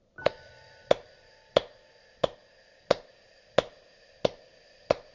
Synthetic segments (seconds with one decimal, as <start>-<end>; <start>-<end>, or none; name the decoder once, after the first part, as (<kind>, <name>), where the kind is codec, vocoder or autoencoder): 0.0-0.5 (vocoder, BigVGAN v2)